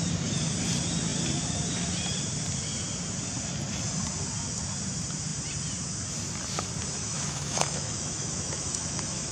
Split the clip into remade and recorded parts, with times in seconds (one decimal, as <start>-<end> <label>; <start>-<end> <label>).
0.0-7.0 recorded; 7.0-9.3 remade